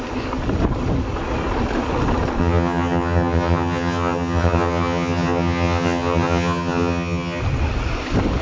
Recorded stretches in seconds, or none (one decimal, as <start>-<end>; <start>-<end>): 0.0-2.4; 7.4-8.4

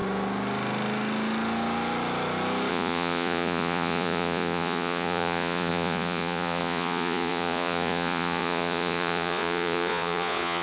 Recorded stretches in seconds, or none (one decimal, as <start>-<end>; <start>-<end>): 0.0-2.7

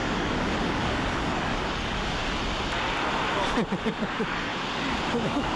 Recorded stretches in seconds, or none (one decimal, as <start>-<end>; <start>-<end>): 2.2-3.8; 4.5-5.1

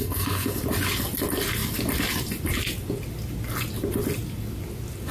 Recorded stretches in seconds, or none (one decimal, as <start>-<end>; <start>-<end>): 0.6-5.1

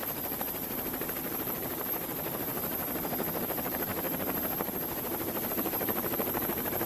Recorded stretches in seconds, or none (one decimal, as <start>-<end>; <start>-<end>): 2.8-3.4; 3.9-5.5

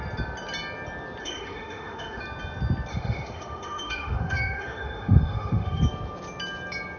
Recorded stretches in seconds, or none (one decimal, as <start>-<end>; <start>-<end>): 0.0-1.2; 2.2-2.9; 5.8-7.0